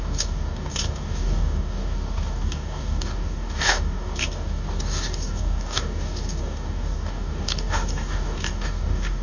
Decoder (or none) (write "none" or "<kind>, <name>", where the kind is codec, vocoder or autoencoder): codec, DAC